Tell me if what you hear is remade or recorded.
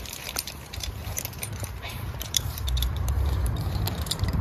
remade